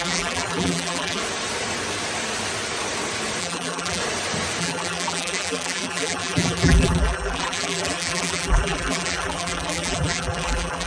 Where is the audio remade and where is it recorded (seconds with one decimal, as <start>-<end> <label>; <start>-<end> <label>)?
0.0-1.2 remade; 1.2-3.4 recorded; 3.4-4.0 remade; 4.0-4.6 recorded; 4.6-10.9 remade